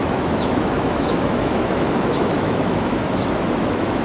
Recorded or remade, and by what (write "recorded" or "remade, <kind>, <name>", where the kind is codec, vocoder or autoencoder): remade, autoencoder, DAC-VAE